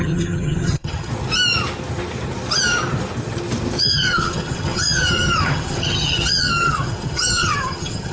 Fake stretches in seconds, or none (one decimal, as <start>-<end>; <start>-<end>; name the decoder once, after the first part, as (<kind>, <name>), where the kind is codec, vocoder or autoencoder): 0.0-1.1 (vocoder, HiFi-GAN); 3.8-8.1